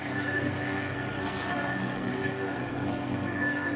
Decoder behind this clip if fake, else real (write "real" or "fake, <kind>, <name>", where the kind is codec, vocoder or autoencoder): fake, codec, SNAC